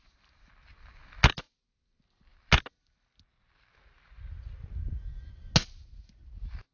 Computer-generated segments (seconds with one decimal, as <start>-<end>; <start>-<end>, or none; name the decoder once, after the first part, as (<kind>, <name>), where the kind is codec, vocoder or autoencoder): none